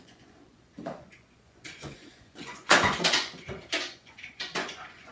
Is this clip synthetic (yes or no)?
yes